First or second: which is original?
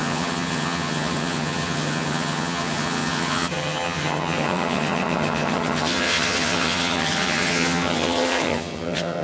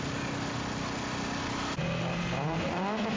second